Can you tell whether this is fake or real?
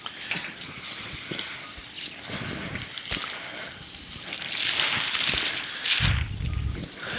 real